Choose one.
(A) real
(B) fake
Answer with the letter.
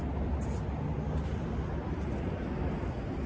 A